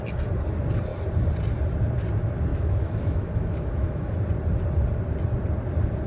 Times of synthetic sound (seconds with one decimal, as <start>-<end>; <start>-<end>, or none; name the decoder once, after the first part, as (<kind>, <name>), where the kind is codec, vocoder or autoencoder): 2.5-4.1 (autoencoder, DAC-VAE)